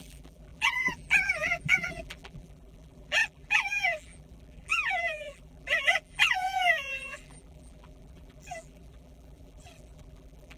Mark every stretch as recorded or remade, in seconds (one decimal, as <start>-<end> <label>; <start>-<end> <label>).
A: 0.0-10.6 remade